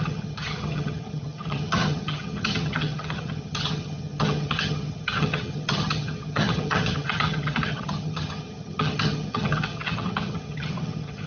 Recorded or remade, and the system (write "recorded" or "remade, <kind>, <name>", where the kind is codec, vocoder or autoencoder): remade, vocoder, HiFi-GAN